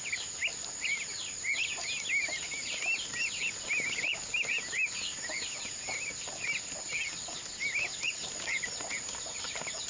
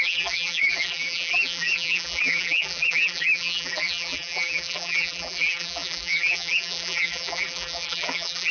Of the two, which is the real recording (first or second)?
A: first